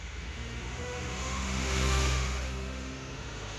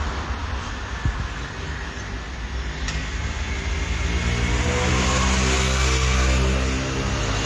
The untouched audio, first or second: second